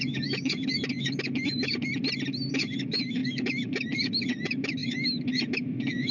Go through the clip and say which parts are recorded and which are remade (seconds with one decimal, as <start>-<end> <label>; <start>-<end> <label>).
0.0-1.9 remade; 1.9-2.5 recorded; 2.5-6.1 remade